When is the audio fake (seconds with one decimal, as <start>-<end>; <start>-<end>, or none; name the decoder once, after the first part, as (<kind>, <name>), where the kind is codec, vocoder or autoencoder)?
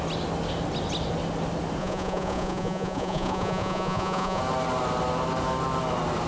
1.8-4.4 (vocoder, Vocos)